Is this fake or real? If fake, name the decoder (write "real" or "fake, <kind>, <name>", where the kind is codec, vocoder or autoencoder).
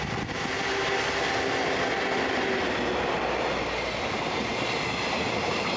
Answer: real